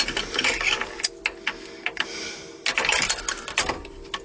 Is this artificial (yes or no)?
no